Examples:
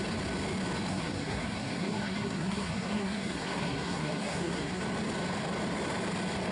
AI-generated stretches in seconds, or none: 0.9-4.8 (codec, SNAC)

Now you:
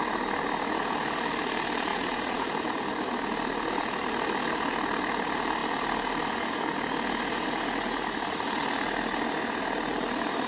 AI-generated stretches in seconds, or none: 1.9-2.5 (vocoder, Vocos)

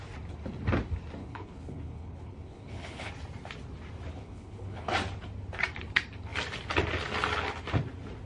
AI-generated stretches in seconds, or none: 1.2-3.1 (codec, HILCodec); 4.1-4.9

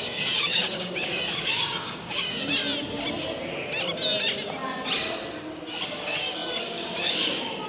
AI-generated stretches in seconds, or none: 0.0-2.5 (codec, DAC); 5.7-7.7

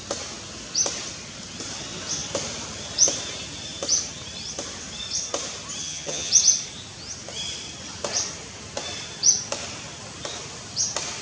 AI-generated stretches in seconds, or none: 5.8-6.3 (vocoder, HiFi-GAN)